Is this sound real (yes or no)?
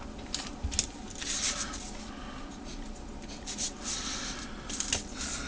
yes